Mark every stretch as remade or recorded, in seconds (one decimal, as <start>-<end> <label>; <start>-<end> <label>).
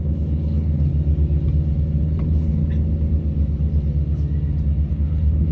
0.0-0.9 remade; 0.9-2.0 recorded; 2.0-2.6 remade; 2.6-4.9 recorded; 4.9-5.5 remade